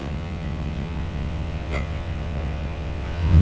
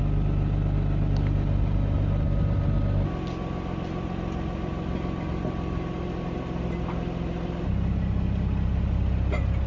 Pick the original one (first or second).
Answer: second